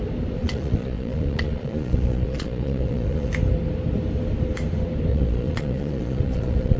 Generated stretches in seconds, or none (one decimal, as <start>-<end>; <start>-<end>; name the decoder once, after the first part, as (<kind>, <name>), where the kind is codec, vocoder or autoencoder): 0.4-3.3 (vocoder, Vocos); 5.1-6.8